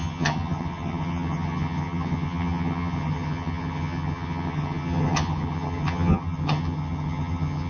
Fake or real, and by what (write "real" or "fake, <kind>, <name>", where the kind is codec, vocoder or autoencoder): fake, vocoder, HiFi-GAN